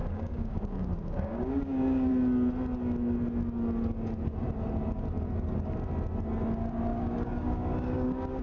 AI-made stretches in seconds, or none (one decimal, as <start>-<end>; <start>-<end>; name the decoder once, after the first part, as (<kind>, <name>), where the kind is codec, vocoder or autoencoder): 0.0-2.1 (codec, DAC); 6.9-8.4